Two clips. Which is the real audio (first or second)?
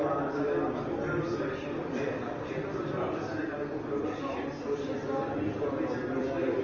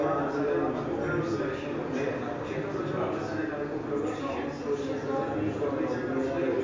second